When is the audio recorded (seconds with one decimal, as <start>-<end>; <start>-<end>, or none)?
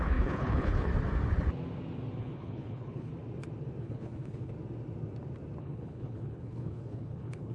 0.9-2.2; 3.1-3.8; 4.5-5.6